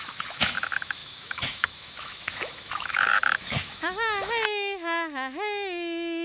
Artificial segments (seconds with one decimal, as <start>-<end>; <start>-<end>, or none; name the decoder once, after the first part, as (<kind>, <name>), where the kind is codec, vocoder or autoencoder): 0.0-6.2 (autoencoder, DAC-VAE)